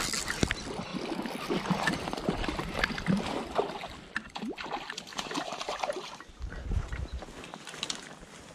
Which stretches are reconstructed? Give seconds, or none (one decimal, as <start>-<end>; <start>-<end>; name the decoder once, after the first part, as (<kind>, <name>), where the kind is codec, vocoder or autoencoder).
5.1-6.3 (vocoder, BigVGAN v2)